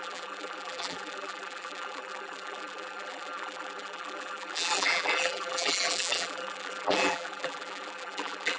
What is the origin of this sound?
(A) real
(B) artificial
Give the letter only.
B